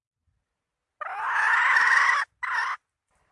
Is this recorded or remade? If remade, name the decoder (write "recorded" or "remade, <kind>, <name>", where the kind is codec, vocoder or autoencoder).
recorded